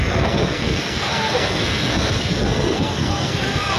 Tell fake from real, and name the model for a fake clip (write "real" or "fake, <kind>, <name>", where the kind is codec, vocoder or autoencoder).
fake, codec, SNAC